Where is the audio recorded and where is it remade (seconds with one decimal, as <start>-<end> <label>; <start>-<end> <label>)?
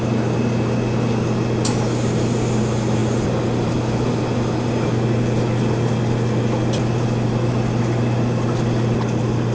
0.0-9.5 recorded